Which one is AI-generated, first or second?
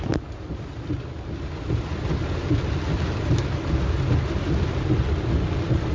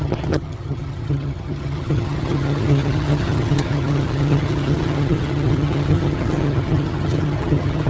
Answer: second